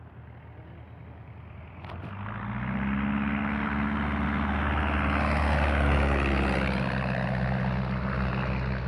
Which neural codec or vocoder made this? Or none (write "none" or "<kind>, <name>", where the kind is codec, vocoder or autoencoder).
none